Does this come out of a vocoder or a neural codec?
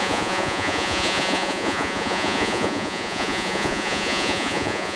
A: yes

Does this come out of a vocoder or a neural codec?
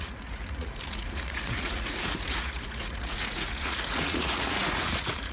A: yes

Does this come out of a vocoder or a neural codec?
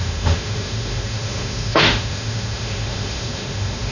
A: yes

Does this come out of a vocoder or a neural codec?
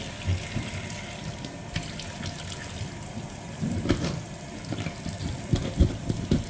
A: no